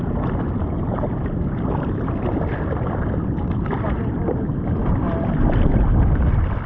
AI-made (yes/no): no